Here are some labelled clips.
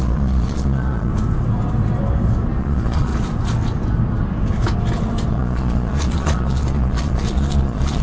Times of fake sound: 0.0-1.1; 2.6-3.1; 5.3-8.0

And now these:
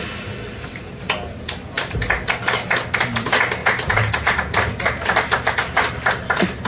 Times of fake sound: none

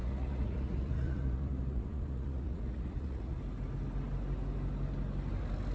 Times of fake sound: 0.0-3.4

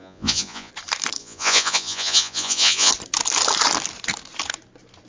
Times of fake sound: 0.0-0.7; 1.2-2.9

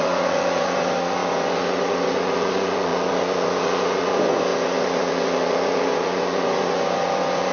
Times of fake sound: 0.0-7.5

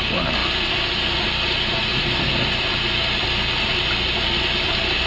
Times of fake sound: none

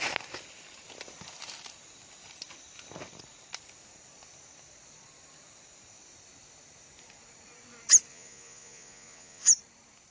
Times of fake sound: 8.1-9.5